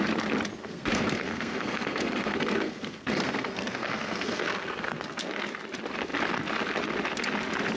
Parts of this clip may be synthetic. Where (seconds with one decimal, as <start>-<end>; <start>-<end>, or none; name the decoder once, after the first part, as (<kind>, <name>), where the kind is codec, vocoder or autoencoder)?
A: 0.6-5.3 (codec, SNAC)